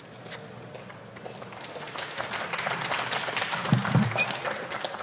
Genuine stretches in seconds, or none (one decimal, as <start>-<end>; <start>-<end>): 0.0-1.6; 2.3-5.0